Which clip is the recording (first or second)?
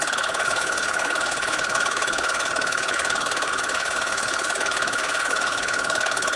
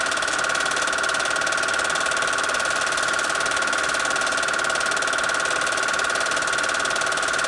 second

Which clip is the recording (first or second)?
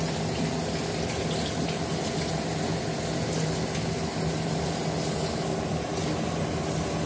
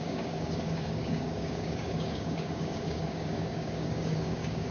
first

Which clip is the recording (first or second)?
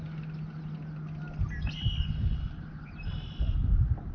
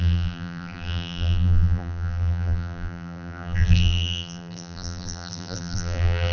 first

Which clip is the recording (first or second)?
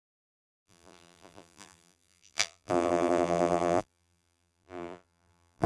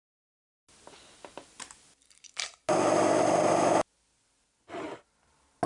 second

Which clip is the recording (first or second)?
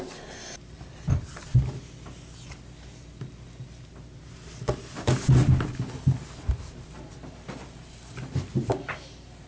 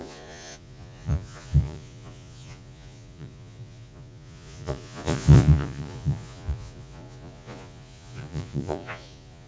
first